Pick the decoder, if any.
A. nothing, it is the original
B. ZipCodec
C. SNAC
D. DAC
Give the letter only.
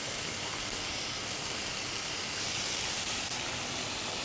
A